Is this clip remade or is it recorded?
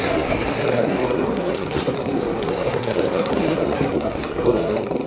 remade